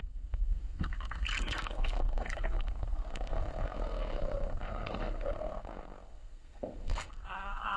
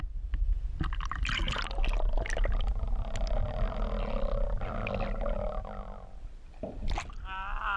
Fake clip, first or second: first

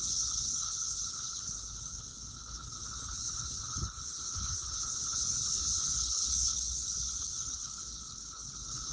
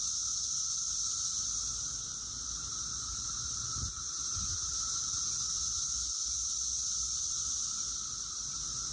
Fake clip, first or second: first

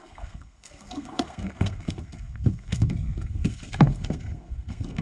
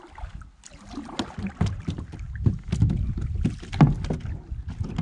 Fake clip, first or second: first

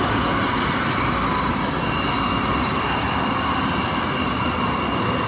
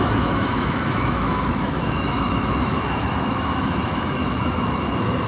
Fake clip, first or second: second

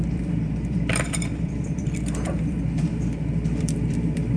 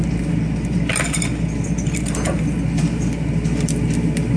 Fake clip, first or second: first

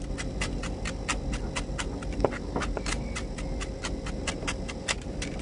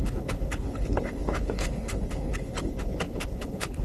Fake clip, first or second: second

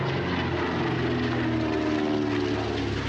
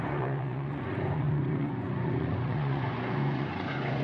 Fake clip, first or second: second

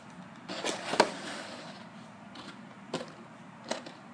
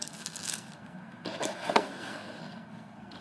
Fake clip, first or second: second